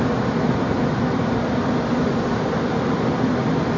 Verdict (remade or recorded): recorded